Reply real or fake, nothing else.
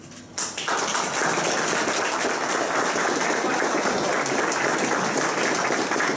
real